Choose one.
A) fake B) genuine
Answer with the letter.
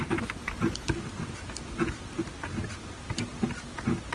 B